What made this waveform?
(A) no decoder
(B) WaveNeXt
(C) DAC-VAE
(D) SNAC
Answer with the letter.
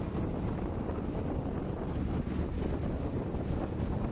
A